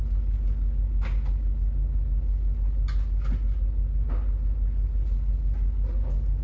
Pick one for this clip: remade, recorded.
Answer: recorded